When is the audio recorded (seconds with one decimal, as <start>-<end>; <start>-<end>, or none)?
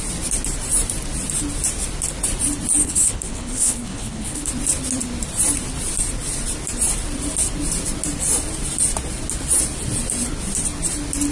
0.0-2.8; 4.5-11.3